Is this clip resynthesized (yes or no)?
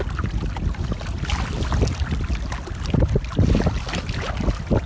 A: no